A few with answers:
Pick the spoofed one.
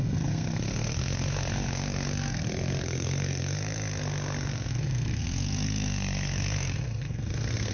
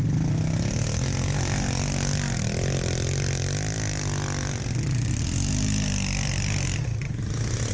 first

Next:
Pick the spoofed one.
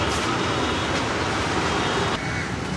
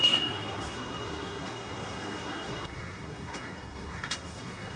second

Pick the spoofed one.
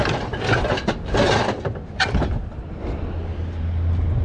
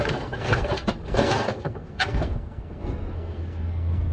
second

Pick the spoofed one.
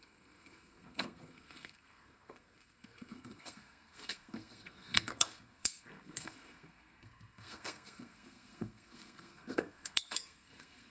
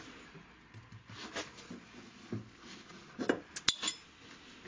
first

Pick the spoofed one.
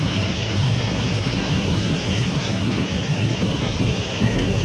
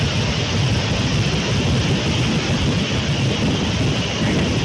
first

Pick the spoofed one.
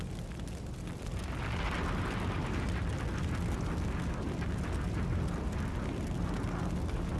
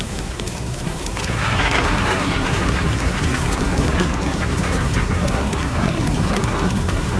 second